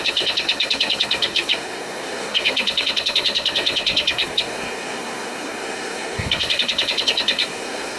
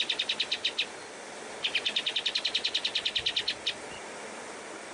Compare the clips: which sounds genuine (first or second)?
second